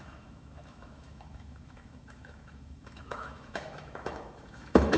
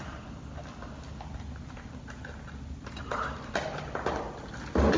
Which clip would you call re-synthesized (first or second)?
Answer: first